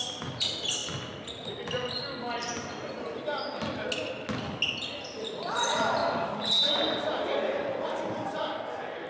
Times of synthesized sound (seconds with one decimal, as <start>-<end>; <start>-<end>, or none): 0.0-0.8; 5.0-6.0; 8.7-9.1